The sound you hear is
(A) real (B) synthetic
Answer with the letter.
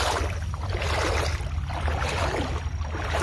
A